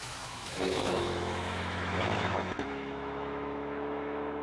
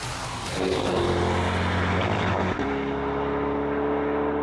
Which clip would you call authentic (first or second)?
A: second